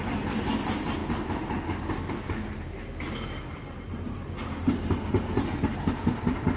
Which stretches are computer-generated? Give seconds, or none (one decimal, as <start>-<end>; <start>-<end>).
none